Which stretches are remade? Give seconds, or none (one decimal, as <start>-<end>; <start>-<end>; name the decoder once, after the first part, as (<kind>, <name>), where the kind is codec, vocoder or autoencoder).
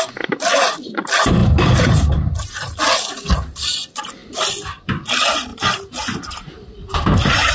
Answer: 1.4-2.8 (vocoder, BigVGAN v2); 5.5-7.5